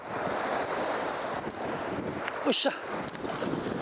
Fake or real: real